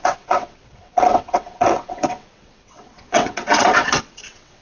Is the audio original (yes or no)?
no